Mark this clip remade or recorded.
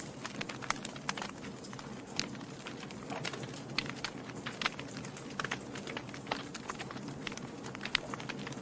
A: recorded